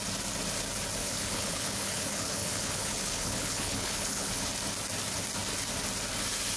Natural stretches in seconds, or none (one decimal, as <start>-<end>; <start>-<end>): 0.0-1.0; 4.5-6.6